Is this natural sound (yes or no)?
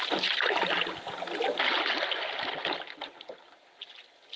yes